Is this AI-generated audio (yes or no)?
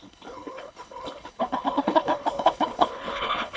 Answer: yes